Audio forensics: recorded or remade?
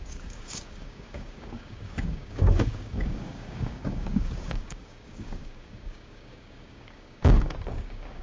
remade